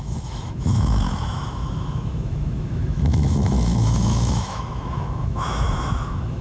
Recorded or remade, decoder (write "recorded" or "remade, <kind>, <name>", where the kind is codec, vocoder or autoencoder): remade, autoencoder, DAC-VAE